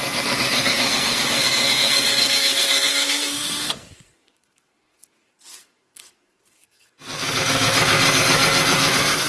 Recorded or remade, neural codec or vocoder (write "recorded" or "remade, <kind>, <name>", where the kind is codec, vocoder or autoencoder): remade, codec, SNAC